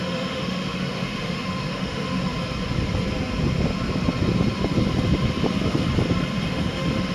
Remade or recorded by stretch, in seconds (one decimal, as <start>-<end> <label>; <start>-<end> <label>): 0.0-2.2 remade; 2.2-6.5 recorded; 6.5-7.1 remade

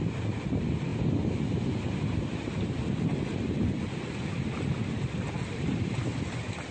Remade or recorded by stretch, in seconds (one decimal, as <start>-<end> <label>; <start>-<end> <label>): 0.0-0.9 remade; 0.9-2.2 recorded; 2.2-6.7 remade

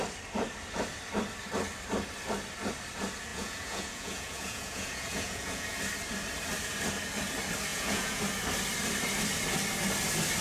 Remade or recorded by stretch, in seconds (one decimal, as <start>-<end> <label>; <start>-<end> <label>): 0.0-3.3 recorded; 3.3-5.8 remade; 5.8-7.7 recorded; 7.7-8.2 remade; 8.2-10.4 recorded

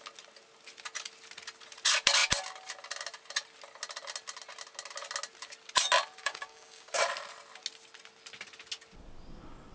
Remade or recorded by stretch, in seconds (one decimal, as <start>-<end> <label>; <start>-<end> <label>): 0.0-6.2 recorded; 6.2-7.0 remade; 7.0-9.7 recorded

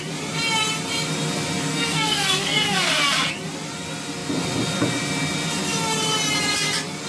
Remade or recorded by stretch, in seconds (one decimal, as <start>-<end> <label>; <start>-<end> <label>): 0.0-1.7 recorded; 1.7-2.9 remade; 2.9-7.1 recorded

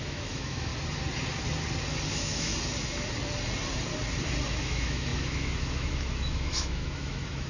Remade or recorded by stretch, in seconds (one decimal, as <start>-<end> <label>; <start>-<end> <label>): 0.0-0.7 remade; 0.7-2.1 recorded; 2.1-2.5 remade; 2.5-4.5 recorded; 4.5-7.5 remade